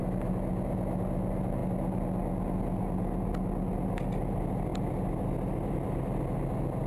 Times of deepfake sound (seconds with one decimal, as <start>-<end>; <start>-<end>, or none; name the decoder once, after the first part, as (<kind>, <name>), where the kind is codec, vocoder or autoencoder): 4.7-5.7 (vocoder, BigVGAN v2)